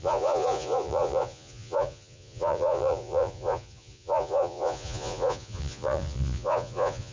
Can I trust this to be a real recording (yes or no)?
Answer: no